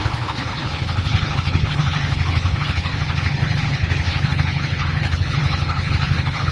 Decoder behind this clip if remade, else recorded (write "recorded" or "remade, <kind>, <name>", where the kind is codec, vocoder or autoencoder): remade, codec, HILCodec